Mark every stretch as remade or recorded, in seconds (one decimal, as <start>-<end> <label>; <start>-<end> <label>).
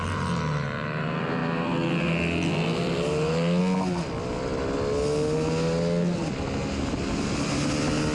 0.0-8.1 recorded